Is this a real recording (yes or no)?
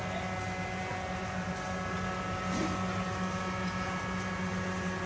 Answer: yes